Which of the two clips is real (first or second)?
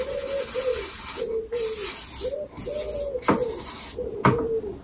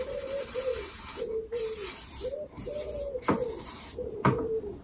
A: first